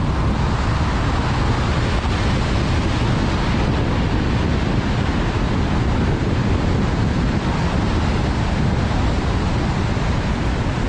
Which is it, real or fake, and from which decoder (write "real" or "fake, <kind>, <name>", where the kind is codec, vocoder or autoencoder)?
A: real